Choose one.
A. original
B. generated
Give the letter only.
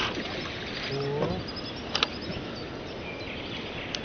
A